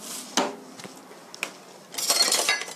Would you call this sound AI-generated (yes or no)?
no